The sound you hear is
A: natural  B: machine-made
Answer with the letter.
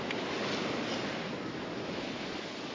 A